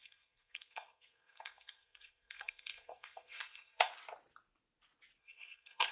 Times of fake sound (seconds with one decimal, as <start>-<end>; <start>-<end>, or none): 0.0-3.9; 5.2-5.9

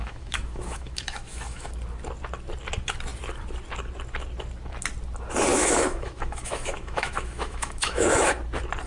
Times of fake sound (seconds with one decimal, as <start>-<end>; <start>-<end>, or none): 0.0-1.7; 5.5-8.3

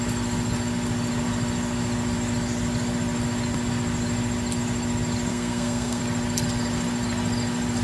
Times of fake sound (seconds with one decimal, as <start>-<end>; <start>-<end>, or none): 5.3-6.0